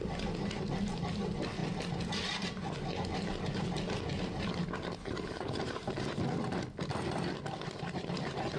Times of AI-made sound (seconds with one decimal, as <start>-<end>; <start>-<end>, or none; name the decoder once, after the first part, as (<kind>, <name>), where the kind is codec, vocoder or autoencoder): none